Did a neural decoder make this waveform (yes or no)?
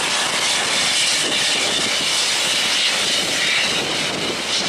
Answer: no